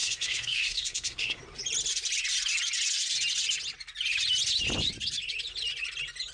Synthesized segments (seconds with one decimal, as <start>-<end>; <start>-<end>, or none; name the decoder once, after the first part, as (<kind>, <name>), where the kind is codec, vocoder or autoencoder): 0.0-1.4 (codec, SNAC)